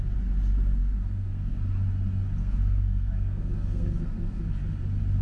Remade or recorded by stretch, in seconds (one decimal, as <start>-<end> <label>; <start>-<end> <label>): 0.0-0.8 recorded; 0.8-1.6 remade; 1.6-2.4 recorded; 2.4-4.4 remade; 4.4-5.2 recorded